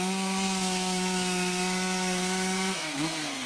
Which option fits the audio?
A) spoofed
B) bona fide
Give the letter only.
A